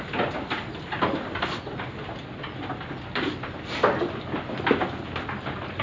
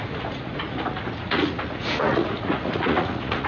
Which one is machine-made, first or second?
second